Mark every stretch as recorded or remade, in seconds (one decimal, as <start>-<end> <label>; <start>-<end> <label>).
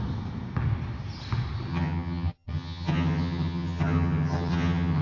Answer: 0.0-1.7 recorded; 1.7-5.0 remade